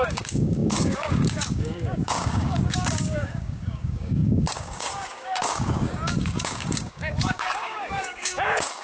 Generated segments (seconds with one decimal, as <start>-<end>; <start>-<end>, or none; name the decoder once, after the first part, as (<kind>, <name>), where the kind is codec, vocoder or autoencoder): 0.0-8.8 (codec, DAC)